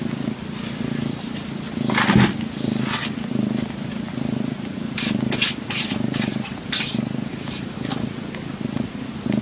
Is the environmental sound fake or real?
real